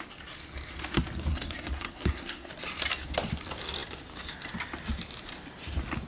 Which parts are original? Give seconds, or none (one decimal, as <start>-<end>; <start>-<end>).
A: 0.0-1.3; 2.5-6.1